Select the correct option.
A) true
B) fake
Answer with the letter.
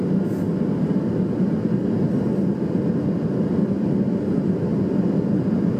A